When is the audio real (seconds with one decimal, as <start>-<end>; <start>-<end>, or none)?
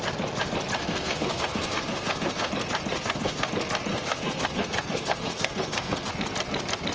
0.0-0.8; 2.5-2.9; 3.5-3.9; 6.1-6.9